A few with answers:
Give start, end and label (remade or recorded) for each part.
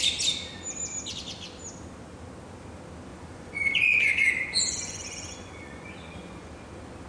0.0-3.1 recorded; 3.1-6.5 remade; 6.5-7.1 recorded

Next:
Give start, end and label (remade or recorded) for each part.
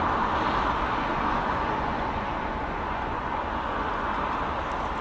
0.0-1.1 recorded; 1.1-4.1 remade; 4.1-5.0 recorded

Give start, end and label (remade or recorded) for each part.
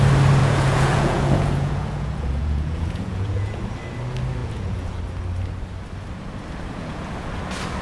0.0-0.4 recorded; 0.4-3.6 remade; 3.6-4.4 recorded; 4.4-5.0 remade; 5.0-6.8 recorded; 6.8-7.3 remade; 7.3-7.8 recorded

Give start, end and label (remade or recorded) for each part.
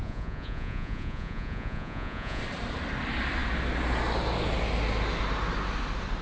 0.0-2.4 remade; 2.4-6.2 recorded